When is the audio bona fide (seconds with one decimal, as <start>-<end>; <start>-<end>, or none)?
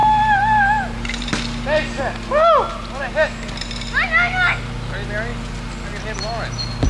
1.3-6.9